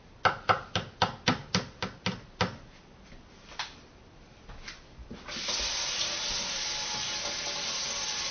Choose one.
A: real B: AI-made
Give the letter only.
A